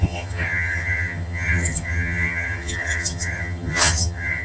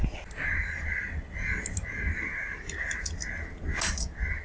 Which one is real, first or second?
second